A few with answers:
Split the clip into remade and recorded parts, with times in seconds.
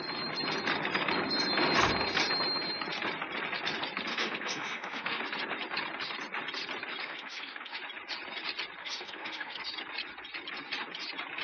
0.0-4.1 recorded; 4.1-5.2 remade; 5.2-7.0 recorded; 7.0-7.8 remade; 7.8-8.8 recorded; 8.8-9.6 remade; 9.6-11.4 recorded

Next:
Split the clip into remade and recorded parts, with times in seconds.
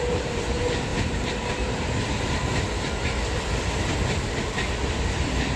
0.0-5.6 recorded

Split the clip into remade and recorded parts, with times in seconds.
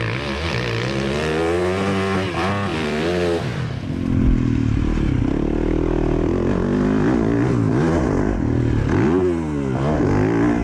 0.0-2.7 recorded; 2.7-3.9 remade; 3.9-10.6 recorded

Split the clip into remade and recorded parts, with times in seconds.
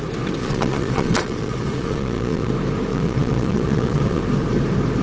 0.0-0.4 recorded; 0.4-2.5 remade; 2.5-2.9 recorded; 2.9-4.2 remade; 4.2-5.0 recorded